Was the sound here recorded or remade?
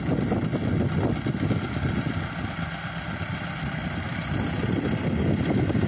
recorded